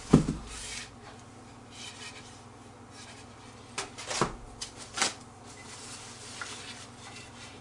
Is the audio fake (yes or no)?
no